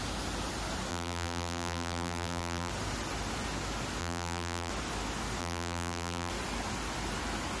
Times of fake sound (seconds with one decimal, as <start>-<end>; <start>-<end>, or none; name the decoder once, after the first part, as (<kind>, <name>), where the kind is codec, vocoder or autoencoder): 0.9-2.7 (vocoder, BigVGAN v2); 4.0-4.7; 5.4-6.3